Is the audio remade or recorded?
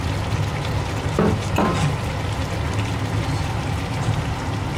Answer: recorded